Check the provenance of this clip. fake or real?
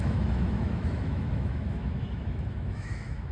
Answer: fake